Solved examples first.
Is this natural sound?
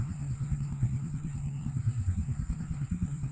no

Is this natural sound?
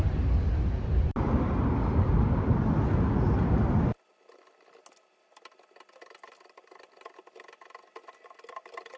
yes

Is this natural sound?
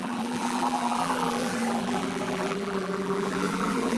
no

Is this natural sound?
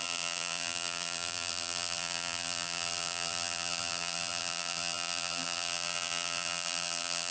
no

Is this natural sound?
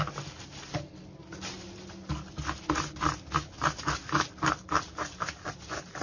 yes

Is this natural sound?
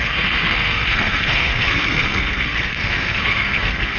no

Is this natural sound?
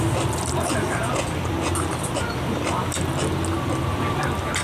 yes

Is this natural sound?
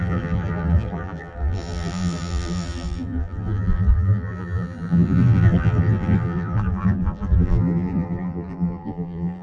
no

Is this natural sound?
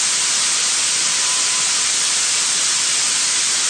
no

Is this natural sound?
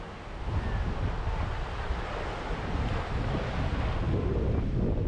yes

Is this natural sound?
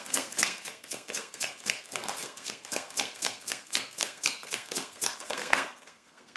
no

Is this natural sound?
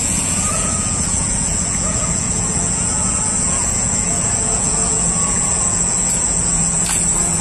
no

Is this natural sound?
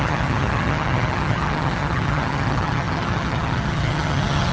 no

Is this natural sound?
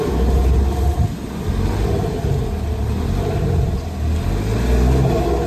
yes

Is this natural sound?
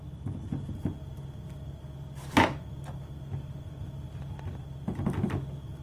yes